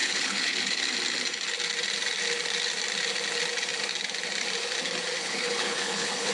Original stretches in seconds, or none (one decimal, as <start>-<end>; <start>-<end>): 0.8-5.2